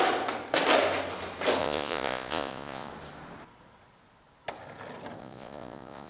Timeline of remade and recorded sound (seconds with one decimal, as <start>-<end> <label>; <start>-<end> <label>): 0.0-1.6 recorded; 1.6-2.9 remade; 2.9-5.2 recorded; 5.2-6.1 remade